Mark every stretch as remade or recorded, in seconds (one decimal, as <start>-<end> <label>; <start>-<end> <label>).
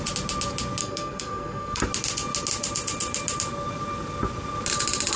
0.0-0.8 recorded; 0.8-1.8 remade; 1.8-5.2 recorded